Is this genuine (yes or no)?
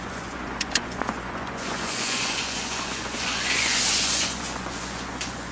no